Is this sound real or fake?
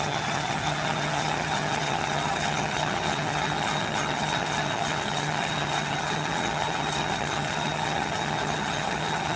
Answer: fake